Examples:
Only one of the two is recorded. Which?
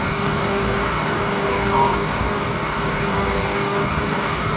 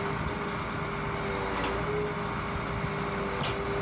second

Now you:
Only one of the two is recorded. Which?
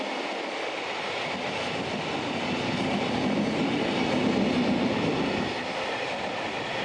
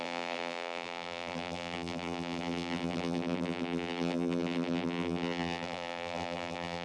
first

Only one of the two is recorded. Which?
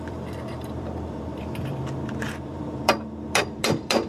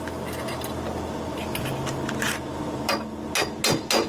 second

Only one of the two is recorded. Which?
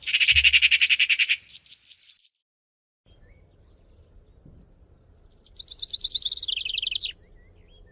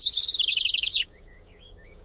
first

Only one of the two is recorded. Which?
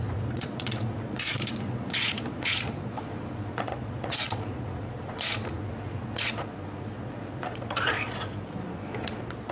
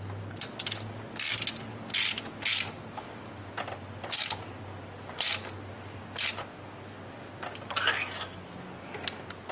second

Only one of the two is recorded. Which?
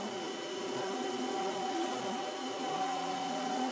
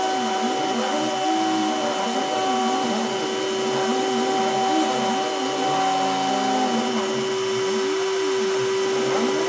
second